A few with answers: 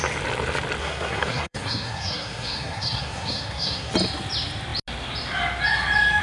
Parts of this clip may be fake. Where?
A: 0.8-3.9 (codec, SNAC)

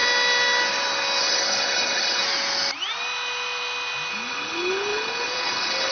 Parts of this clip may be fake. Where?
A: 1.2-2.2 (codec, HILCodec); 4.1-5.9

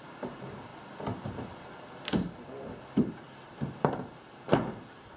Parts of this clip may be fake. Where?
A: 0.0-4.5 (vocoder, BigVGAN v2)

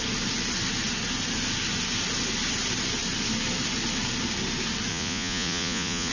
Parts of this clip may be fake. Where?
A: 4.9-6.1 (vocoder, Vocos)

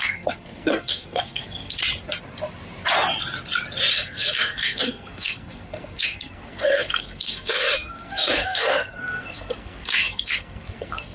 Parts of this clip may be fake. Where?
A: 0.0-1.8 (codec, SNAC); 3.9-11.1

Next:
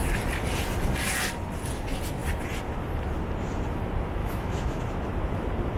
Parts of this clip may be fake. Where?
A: 4.2-4.8 (autoencoder, DAC-VAE)